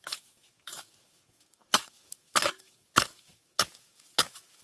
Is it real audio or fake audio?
fake